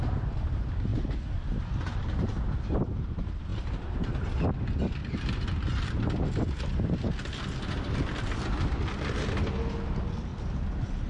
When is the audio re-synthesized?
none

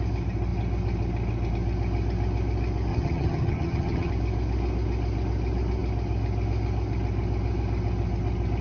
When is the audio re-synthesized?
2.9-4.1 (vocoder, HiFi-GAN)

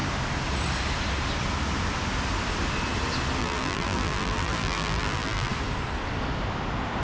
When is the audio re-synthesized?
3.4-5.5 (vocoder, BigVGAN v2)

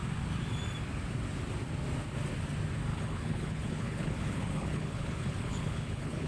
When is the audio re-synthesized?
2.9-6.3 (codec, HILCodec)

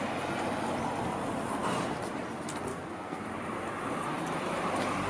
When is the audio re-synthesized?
2.7-3.2 (codec, SNAC)

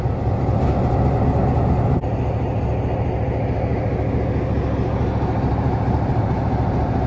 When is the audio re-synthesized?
5.5-7.1 (vocoder, BigVGAN v2)